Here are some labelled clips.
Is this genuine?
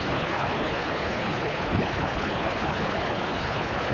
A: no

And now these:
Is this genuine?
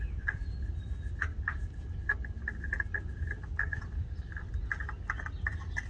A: yes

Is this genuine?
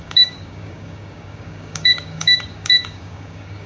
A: no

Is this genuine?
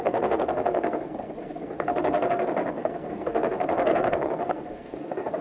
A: no